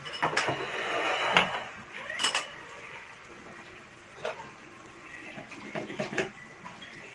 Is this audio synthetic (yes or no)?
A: yes